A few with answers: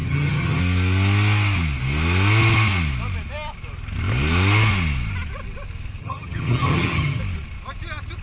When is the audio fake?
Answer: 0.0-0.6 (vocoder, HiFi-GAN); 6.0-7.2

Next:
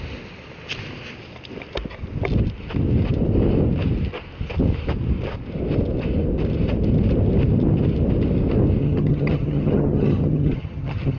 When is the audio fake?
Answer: 8.8-11.2 (vocoder, HiFi-GAN)

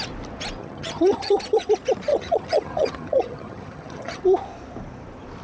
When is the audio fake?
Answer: 0.6-1.7 (vocoder, HiFi-GAN); 2.1-4.2

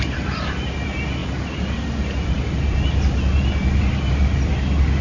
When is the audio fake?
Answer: none

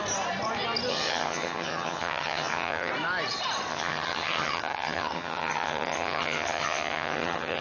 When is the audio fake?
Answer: 0.9-2.9 (vocoder, HiFi-GAN); 3.7-7.6